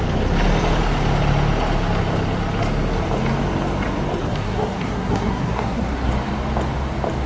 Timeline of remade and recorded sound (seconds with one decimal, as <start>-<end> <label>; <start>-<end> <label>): 0.0-4.2 recorded; 4.2-6.1 remade; 6.1-7.3 recorded